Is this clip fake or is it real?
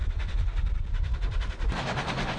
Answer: real